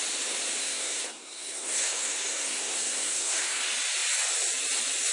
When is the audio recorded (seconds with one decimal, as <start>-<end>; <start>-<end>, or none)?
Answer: 0.0-0.6; 3.6-5.1